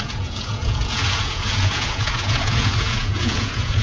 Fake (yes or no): yes